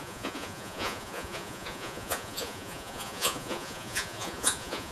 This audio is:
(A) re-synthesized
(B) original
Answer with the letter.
A